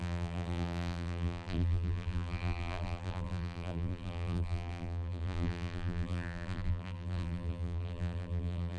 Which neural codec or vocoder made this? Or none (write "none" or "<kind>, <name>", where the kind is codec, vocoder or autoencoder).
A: vocoder, BigVGAN v2